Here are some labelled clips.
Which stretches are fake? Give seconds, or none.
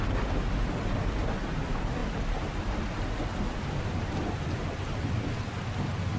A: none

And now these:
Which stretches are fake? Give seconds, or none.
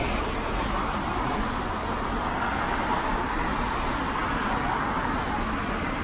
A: none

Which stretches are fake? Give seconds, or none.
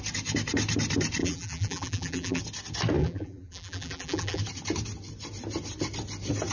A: 1.2-2.4 (vocoder, BigVGAN v2); 3.0-4.4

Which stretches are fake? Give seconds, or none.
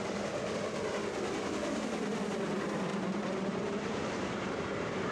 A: 2.9-4.5 (vocoder, BigVGAN v2)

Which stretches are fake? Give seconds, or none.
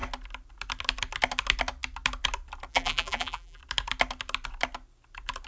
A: 2.7-3.6 (vocoder, BigVGAN v2)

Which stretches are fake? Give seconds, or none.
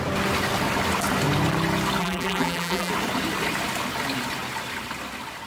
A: 2.0-2.9 (vocoder, BigVGAN v2)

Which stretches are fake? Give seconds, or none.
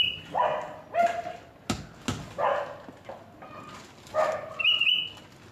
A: none